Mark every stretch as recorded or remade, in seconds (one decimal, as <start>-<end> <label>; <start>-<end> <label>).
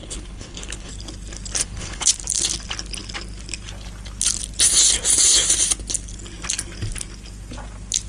0.0-0.9 remade; 0.9-1.6 recorded; 1.6-2.1 remade; 2.1-8.1 recorded